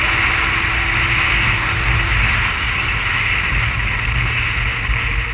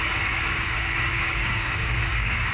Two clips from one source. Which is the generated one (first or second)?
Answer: second